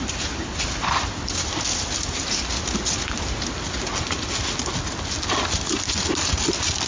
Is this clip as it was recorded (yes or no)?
yes